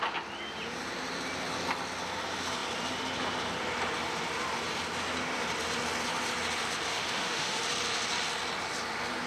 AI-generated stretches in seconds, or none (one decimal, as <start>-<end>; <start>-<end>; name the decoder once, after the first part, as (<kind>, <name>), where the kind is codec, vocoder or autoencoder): 6.9-7.6 (autoencoder, DAC-VAE)

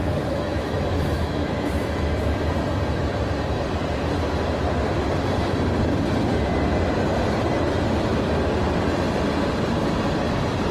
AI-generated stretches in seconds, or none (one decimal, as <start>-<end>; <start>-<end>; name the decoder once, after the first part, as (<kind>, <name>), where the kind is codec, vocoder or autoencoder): 0.0-2.1 (autoencoder, DAC-VAE)

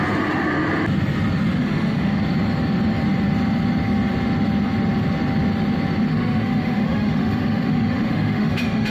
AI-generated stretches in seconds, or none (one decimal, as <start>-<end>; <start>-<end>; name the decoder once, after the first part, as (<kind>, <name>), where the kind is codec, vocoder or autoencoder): 1.6-2.2 (autoencoder, DAC-VAE); 6.1-8.9